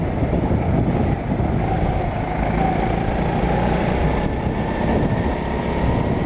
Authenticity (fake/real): real